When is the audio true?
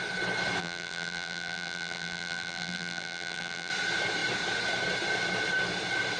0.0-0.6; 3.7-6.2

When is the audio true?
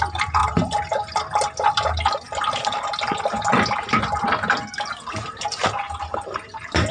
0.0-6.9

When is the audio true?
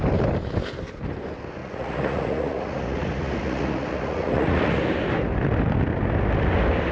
0.0-1.6; 4.8-6.9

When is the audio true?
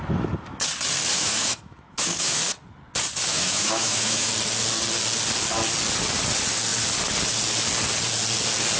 0.0-1.1; 2.4-3.3; 4.3-8.8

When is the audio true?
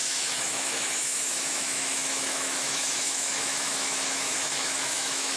none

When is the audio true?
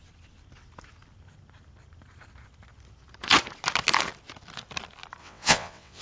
0.0-5.2